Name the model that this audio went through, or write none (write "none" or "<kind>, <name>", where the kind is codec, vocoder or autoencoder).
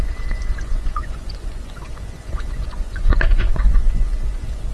vocoder, Vocos